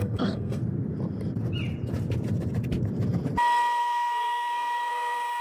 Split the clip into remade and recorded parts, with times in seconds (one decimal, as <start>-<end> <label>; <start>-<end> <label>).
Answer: 0.0-0.6 remade; 0.6-3.8 recorded; 3.8-5.4 remade